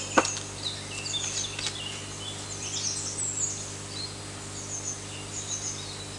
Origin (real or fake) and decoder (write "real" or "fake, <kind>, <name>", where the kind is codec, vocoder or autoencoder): real